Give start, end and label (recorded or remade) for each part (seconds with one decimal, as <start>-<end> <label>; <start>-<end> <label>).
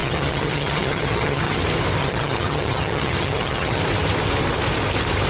0.0-1.6 remade; 1.6-2.0 recorded; 2.0-3.8 remade; 3.8-5.3 recorded